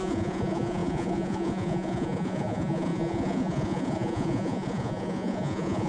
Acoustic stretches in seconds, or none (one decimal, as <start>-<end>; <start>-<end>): none